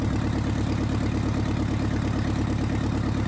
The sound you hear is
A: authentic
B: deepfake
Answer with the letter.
A